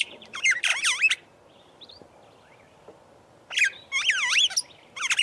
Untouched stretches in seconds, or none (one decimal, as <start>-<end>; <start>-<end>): 0.7-1.6; 2.0-5.2